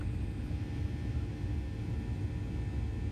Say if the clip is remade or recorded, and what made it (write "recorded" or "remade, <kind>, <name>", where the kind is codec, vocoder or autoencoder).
recorded